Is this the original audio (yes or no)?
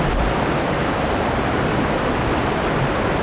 yes